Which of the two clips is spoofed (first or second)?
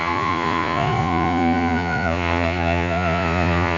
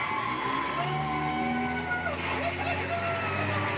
first